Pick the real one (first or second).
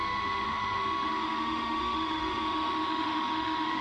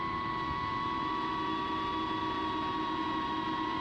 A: second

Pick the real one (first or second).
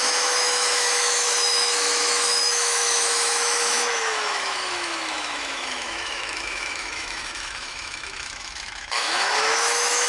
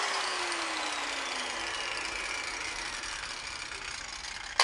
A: second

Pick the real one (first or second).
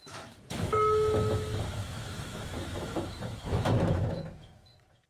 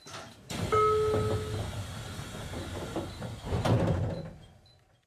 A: second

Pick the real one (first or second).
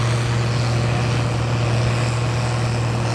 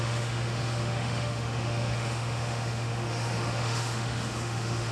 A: first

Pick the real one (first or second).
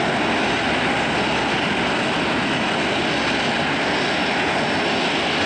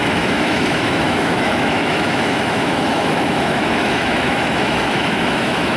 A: first